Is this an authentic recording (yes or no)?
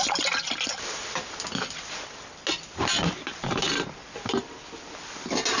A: yes